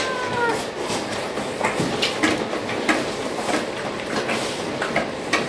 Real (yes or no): yes